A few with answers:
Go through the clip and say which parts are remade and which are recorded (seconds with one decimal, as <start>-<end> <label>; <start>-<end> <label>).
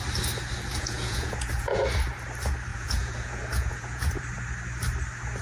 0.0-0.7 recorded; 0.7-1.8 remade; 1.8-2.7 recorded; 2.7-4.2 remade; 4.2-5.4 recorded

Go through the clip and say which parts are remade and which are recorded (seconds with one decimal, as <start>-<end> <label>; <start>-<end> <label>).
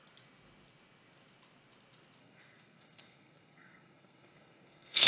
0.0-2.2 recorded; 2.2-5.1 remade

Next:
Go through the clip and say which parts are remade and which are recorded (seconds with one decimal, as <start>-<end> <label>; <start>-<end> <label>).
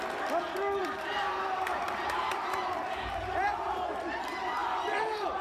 0.0-0.8 recorded; 0.8-4.0 remade; 4.0-4.6 recorded; 4.6-5.4 remade